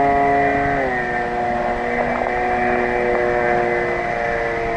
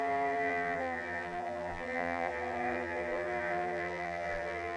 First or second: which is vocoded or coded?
second